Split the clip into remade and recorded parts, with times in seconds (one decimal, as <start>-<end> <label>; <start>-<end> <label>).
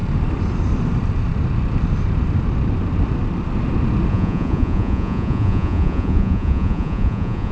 0.0-4.1 recorded; 4.1-7.5 remade